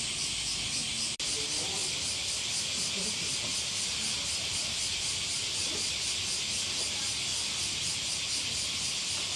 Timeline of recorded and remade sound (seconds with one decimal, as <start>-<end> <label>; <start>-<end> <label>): 0.0-9.4 recorded